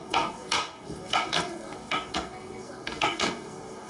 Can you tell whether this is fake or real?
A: fake